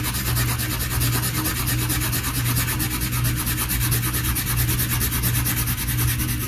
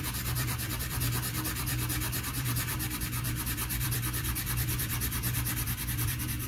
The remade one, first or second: second